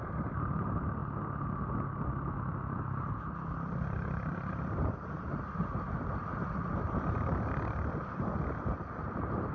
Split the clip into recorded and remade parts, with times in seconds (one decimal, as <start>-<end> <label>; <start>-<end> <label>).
0.0-1.0 remade; 1.0-4.5 recorded; 4.5-6.3 remade; 6.3-9.0 recorded; 9.0-9.5 remade